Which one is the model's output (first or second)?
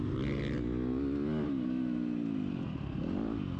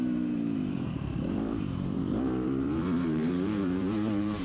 second